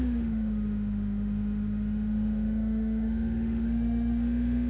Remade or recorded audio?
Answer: remade